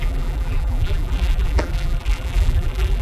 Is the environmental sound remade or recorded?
remade